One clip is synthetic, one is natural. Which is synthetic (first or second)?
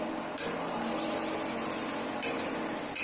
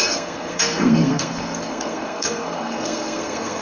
second